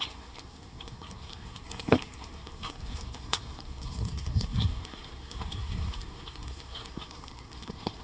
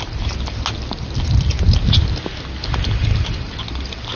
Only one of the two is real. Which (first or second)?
second